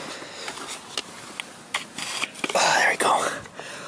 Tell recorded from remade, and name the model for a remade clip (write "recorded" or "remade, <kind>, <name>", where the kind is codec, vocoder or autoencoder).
recorded